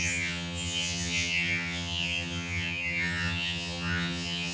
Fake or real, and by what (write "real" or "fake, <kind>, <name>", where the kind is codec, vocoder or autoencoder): fake, vocoder, HiFi-GAN